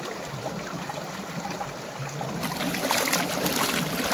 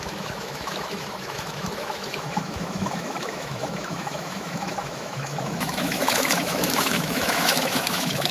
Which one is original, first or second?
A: first